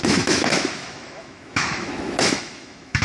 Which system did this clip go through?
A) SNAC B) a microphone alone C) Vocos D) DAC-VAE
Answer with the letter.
D